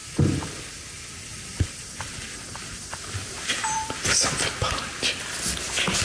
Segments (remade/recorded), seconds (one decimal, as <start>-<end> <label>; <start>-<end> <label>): 0.0-0.6 remade; 0.6-1.3 recorded; 1.3-3.7 remade; 3.7-6.0 recorded